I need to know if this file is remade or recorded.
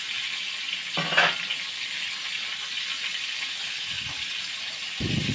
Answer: recorded